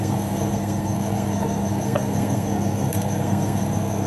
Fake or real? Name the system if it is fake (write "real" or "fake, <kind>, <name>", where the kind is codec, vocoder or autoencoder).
fake, codec, SNAC